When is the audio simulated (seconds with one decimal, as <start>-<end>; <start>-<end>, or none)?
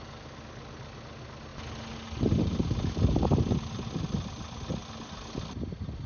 none